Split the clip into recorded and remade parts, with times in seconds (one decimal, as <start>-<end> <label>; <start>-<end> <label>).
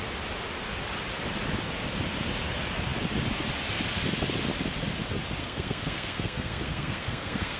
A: 0.0-5.4 recorded; 5.4-7.6 remade